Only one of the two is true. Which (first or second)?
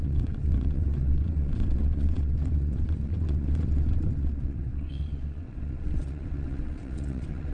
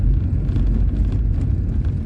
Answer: second